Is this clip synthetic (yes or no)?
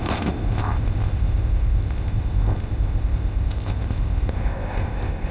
yes